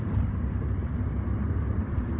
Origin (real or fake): fake